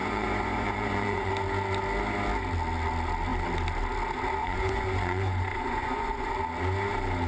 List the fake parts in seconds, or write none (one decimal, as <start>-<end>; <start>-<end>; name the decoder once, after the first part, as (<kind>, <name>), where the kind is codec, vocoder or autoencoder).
0.0-1.3 (vocoder, Vocos); 4.4-6.3